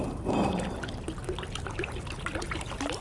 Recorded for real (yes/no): yes